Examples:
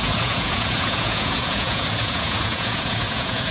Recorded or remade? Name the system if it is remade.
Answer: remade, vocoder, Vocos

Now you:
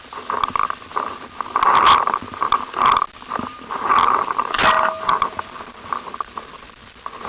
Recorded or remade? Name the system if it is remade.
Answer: recorded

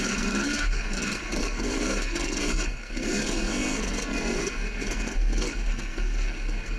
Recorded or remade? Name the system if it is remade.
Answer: remade, codec, SNAC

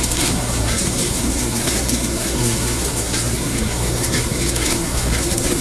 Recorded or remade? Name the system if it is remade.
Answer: remade, codec, SNAC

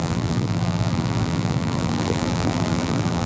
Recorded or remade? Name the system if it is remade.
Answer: remade, vocoder, BigVGAN v2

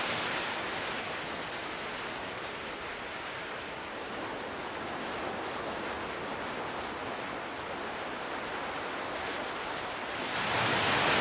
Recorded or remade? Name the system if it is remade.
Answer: recorded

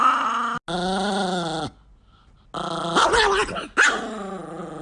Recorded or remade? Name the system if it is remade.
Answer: recorded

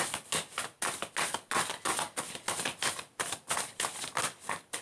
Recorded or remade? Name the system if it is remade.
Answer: recorded